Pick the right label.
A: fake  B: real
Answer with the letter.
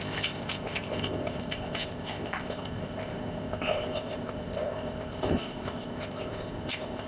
A